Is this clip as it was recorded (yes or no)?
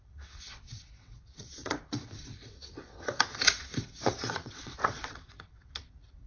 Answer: no